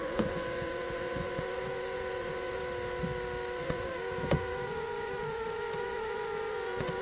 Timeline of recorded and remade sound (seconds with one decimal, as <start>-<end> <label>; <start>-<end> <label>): 0.0-2.6 remade; 2.6-3.6 recorded; 3.6-7.0 remade